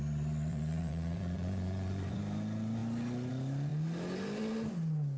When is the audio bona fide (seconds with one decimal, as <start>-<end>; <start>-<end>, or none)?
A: 0.0-0.5; 2.2-5.2